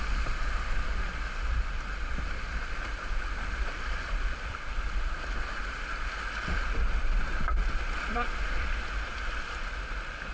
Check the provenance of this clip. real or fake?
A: real